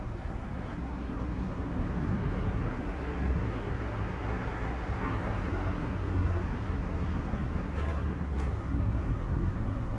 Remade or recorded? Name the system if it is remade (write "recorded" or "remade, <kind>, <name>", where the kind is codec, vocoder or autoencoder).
remade, codec, SNAC